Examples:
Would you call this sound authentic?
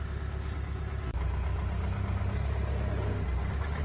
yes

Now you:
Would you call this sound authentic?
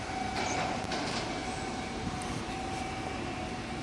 yes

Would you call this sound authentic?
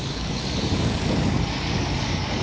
no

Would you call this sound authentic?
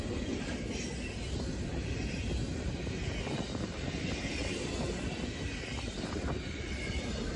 yes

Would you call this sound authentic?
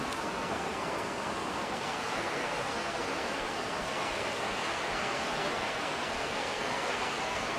no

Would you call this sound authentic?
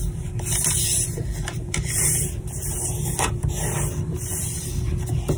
no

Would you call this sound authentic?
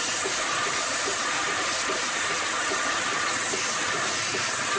yes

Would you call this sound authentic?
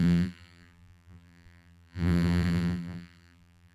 no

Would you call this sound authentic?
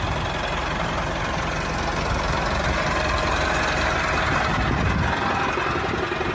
yes